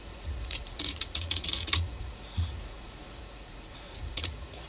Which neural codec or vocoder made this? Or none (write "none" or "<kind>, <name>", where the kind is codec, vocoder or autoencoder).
vocoder, Vocos